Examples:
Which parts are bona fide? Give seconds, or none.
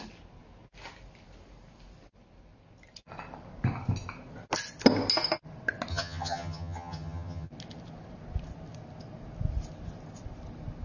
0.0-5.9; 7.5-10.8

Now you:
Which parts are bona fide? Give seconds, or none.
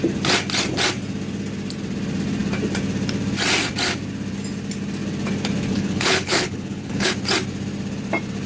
0.0-5.7; 7.1-8.5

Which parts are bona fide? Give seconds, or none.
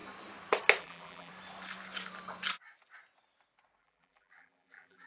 0.0-0.8; 1.3-3.8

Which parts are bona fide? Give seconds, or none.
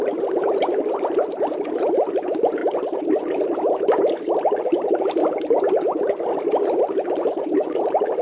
2.6-4.6; 5.2-6.8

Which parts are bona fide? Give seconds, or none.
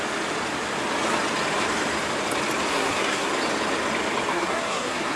0.0-2.7; 3.3-4.3